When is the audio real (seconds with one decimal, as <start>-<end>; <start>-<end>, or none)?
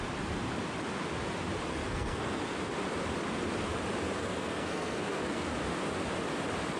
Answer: 0.0-1.7; 2.4-4.2; 5.5-6.8